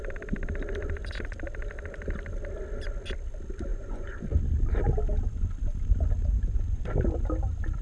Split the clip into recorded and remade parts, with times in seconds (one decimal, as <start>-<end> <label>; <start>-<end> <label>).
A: 0.0-3.7 recorded; 3.7-4.2 remade; 4.2-6.2 recorded; 6.2-6.8 remade; 6.8-7.8 recorded